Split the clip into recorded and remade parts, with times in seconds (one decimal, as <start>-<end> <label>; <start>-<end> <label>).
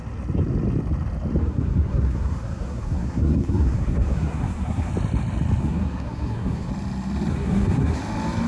0.0-1.4 recorded; 1.4-4.9 remade; 4.9-5.6 recorded; 5.6-6.7 remade; 6.7-7.3 recorded; 7.3-8.0 remade; 8.0-8.5 recorded